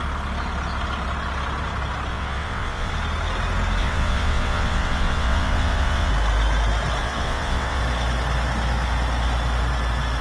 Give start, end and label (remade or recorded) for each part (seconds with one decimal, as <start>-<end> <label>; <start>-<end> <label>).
0.0-2.1 recorded; 2.1-2.9 remade; 2.9-3.8 recorded; 3.8-6.1 remade; 6.1-7.0 recorded; 7.0-7.8 remade; 7.8-10.2 recorded